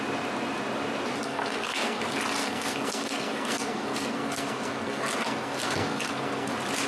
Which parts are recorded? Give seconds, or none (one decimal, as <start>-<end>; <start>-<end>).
0.0-1.2; 2.0-2.4; 6.5-6.9